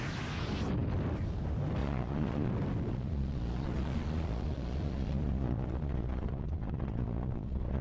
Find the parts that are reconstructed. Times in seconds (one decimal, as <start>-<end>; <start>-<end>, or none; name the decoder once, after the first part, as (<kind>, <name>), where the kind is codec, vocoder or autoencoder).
1.8-2.5 (vocoder, Vocos); 2.9-7.8